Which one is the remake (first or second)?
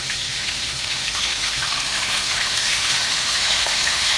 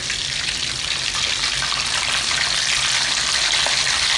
first